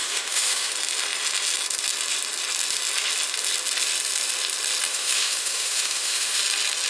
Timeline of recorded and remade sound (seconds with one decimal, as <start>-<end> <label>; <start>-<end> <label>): 0.0-0.7 remade; 0.7-4.9 recorded; 4.9-6.4 remade; 6.4-6.9 recorded